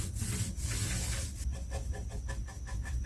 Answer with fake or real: real